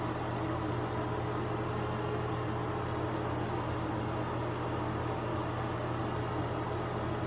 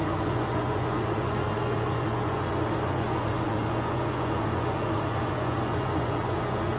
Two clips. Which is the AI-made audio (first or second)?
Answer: second